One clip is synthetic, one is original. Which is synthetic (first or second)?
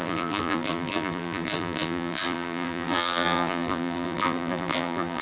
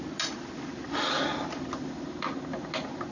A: first